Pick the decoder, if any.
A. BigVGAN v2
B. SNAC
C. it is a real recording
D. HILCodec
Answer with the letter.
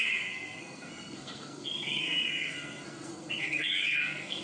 B